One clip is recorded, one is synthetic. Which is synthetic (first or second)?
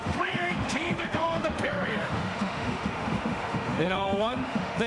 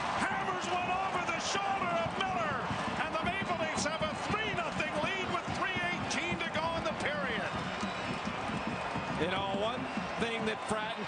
first